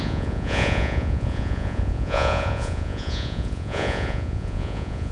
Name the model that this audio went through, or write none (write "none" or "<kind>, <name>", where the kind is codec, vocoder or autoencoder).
vocoder, Vocos